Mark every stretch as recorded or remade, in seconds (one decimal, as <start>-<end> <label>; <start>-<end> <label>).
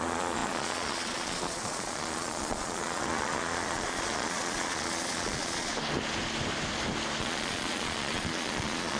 0.0-5.7 remade; 5.7-7.2 recorded; 7.2-9.0 remade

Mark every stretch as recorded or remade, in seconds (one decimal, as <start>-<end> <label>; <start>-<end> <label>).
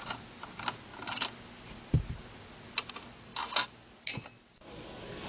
0.0-5.3 recorded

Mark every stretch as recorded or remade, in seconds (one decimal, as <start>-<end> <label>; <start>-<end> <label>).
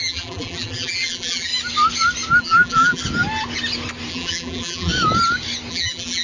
0.0-1.5 remade; 1.5-2.4 recorded; 2.4-3.0 remade; 3.0-4.1 recorded; 4.1-4.9 remade; 4.9-5.7 recorded; 5.7-6.2 remade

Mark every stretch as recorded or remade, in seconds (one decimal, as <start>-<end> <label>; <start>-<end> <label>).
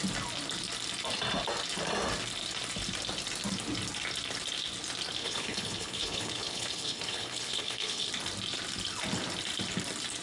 0.0-5.2 recorded; 5.2-8.1 remade; 8.1-10.2 recorded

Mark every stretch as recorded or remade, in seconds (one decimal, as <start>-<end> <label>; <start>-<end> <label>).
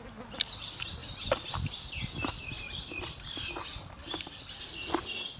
0.0-5.4 recorded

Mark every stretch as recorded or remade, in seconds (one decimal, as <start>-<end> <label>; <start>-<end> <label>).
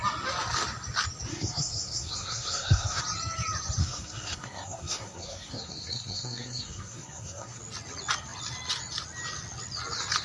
0.0-1.3 recorded; 1.3-3.0 remade; 3.0-3.8 recorded; 3.8-7.6 remade; 7.6-10.2 recorded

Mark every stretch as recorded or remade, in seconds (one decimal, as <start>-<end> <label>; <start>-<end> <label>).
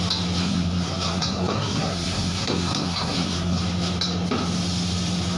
0.0-0.4 recorded; 0.4-3.6 remade; 3.6-5.4 recorded